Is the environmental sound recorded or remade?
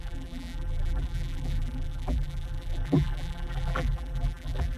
remade